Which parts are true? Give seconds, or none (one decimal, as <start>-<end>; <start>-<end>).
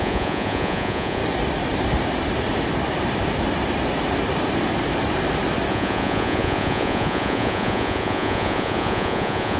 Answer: 1.2-5.7